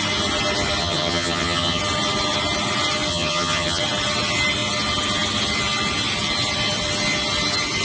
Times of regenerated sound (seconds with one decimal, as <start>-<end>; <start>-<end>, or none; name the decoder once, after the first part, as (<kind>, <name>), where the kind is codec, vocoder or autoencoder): 0.8-1.8 (vocoder, HiFi-GAN); 3.1-3.8